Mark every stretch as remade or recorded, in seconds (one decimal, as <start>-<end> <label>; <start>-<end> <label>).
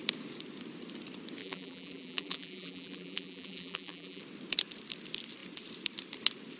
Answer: 0.0-1.4 recorded; 1.4-4.2 remade; 4.2-6.6 recorded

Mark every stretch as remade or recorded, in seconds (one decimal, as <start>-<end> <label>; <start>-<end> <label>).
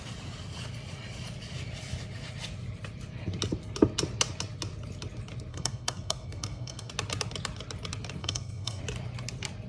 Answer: 0.0-5.5 recorded; 5.5-6.9 remade; 6.9-8.2 recorded; 8.2-8.8 remade; 8.8-9.7 recorded